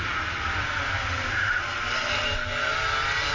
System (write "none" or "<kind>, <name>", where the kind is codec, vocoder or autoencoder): none